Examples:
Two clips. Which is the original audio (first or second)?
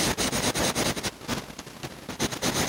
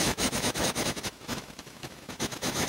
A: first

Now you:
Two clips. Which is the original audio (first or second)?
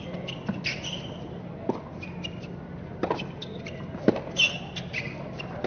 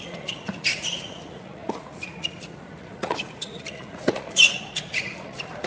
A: first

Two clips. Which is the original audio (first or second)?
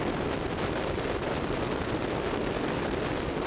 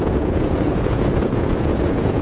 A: first